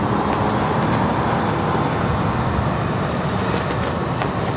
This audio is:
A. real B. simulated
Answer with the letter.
A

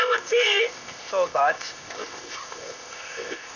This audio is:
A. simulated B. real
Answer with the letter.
A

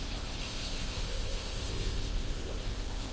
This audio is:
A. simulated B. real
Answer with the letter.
A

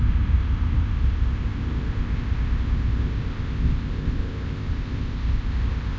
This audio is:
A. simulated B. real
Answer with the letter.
A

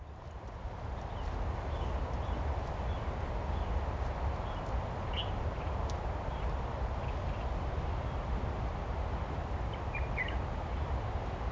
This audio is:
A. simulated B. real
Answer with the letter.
B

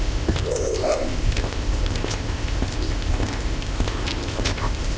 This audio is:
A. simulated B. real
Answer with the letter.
A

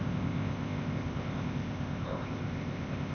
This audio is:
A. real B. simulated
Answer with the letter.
B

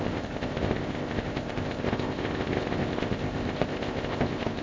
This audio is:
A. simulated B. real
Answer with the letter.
A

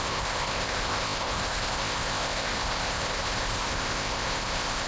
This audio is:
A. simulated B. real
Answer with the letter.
A